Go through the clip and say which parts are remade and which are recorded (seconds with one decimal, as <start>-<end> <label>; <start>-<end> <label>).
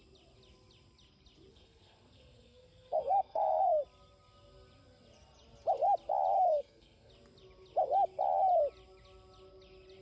0.0-1.5 recorded; 1.5-3.8 remade; 3.8-6.5 recorded; 6.5-7.1 remade; 7.1-10.0 recorded